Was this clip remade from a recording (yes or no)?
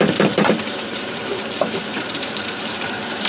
yes